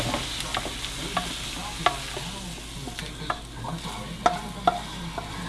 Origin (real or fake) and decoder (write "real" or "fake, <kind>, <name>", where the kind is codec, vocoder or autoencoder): real